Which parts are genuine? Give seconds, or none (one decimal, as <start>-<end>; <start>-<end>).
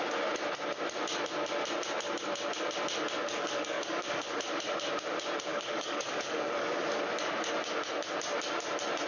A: 0.0-3.2; 4.4-5.5; 7.0-9.1